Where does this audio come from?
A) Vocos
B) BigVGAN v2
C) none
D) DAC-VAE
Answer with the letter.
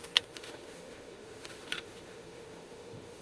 D